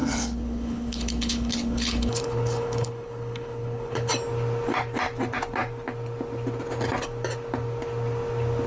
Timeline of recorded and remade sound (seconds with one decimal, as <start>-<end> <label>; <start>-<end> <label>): 0.0-4.1 remade; 4.1-8.7 recorded